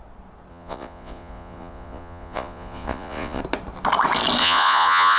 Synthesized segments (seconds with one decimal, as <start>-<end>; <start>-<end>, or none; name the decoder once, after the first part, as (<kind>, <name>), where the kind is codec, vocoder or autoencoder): 0.5-3.4 (vocoder, Vocos); 4.4-5.2